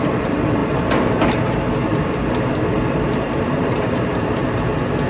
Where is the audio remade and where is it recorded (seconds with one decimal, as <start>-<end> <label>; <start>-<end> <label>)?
0.0-0.6 remade; 0.6-2.9 recorded; 2.9-4.4 remade; 4.4-5.1 recorded